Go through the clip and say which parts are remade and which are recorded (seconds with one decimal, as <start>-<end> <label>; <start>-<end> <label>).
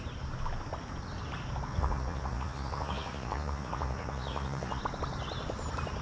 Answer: 0.0-1.7 recorded; 1.7-4.8 remade; 4.8-6.0 recorded